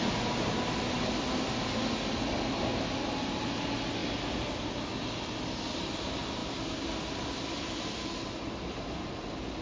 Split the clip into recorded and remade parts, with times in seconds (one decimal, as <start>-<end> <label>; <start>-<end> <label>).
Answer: 0.0-9.6 recorded